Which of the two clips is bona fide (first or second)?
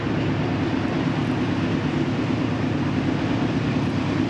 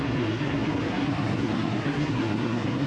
first